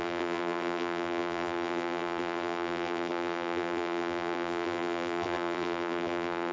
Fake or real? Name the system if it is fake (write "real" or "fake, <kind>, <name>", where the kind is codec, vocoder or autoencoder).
fake, vocoder, BigVGAN v2